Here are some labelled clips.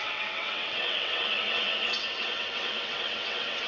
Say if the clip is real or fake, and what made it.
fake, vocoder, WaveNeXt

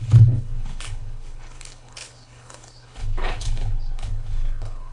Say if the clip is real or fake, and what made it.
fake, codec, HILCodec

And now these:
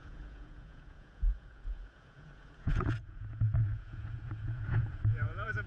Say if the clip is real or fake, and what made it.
fake, vocoder, Vocos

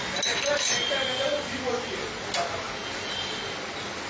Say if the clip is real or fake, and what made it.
real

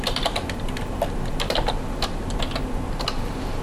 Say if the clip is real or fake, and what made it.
real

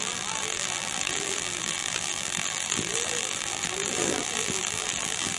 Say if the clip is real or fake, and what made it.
fake, vocoder, BigVGAN v2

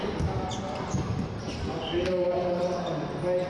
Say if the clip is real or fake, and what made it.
real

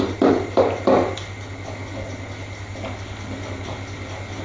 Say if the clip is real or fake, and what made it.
real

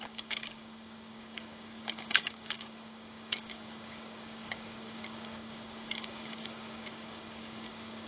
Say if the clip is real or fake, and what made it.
fake, codec, DAC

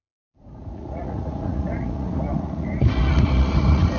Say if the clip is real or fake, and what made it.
fake, vocoder, Vocos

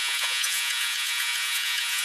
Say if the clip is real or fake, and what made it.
fake, vocoder, Vocos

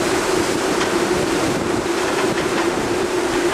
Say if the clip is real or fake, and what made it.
fake, vocoder, BigVGAN v2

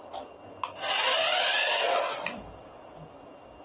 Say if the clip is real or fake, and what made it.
real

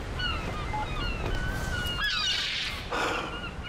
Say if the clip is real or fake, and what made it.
real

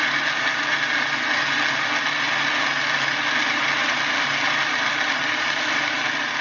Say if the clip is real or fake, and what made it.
real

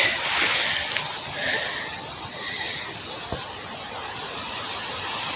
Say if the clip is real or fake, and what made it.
real